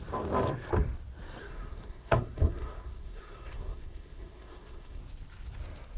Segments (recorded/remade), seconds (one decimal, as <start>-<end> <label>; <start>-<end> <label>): 0.0-1.4 recorded; 1.4-5.0 remade; 5.0-6.0 recorded